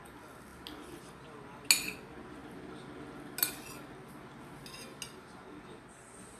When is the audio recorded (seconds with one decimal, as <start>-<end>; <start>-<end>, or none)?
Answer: 0.0-6.4